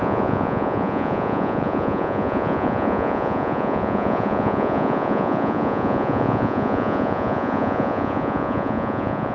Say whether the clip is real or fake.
fake